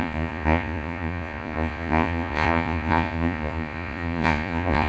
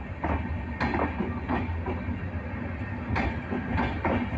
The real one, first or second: second